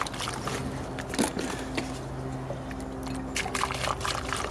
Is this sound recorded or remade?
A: recorded